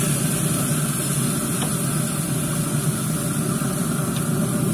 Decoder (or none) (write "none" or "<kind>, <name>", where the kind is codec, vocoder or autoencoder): none